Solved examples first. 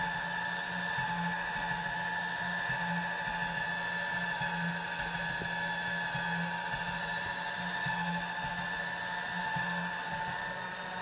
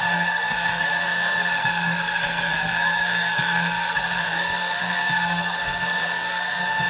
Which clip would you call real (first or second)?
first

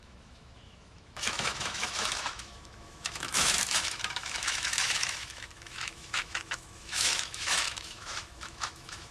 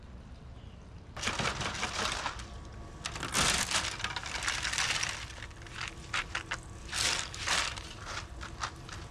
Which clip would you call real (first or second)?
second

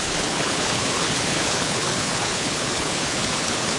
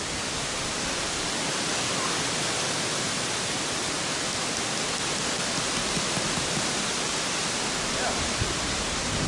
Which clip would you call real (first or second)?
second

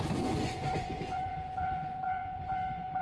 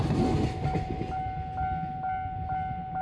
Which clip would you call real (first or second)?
second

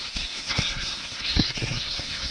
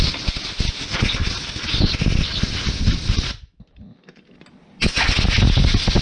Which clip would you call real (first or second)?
second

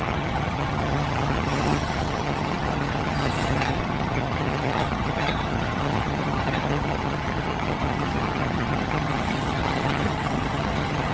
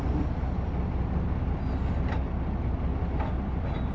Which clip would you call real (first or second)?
second